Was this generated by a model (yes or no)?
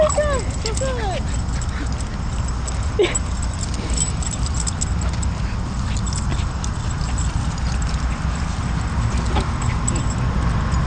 no